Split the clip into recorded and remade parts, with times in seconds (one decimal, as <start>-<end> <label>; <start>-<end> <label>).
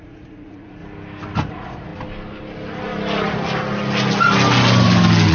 0.0-0.8 remade; 0.8-1.4 recorded; 1.4-1.9 remade; 1.9-5.3 recorded